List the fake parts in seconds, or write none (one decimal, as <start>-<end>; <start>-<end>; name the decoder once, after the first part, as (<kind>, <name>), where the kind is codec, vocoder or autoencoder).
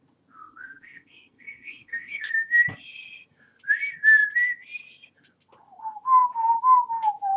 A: 0.4-2.3 (codec, SNAC)